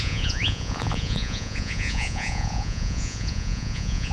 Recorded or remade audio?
remade